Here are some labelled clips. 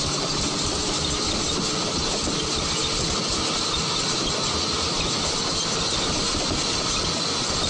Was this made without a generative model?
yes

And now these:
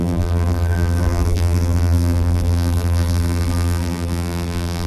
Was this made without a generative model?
no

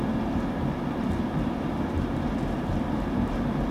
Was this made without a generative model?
yes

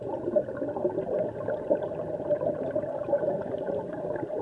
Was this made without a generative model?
yes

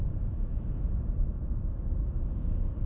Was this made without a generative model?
yes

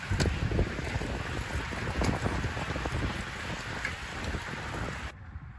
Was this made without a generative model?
yes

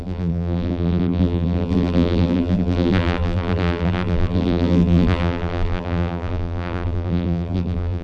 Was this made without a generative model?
no